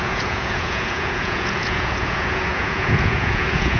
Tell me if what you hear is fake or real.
fake